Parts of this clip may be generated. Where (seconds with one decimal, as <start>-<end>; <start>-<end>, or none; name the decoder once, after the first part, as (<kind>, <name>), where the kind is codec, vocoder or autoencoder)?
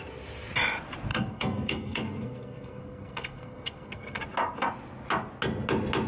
1.1-4.2 (codec, SNAC)